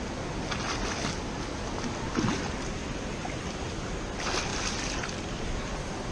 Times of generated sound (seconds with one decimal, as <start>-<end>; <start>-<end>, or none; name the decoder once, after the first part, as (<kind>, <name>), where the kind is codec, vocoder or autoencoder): none